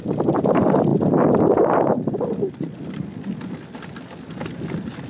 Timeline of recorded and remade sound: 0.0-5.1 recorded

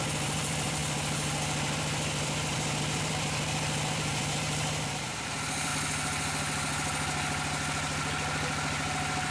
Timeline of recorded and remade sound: 0.0-5.7 remade; 5.7-9.3 recorded